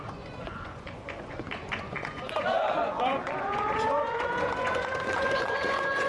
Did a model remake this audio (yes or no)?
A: yes